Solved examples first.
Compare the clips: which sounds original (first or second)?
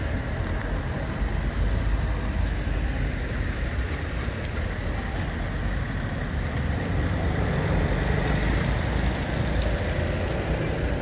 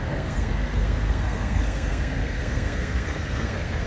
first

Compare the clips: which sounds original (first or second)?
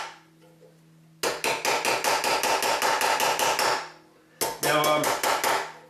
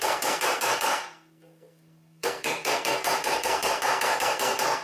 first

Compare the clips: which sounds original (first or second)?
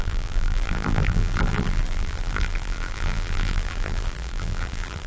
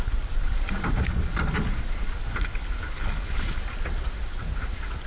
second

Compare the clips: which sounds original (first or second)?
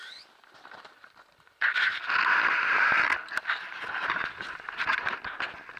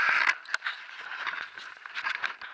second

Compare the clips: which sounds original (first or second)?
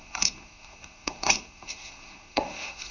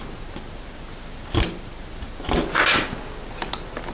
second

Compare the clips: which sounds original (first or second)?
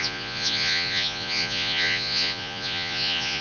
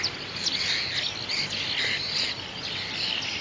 second